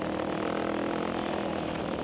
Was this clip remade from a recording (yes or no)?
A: no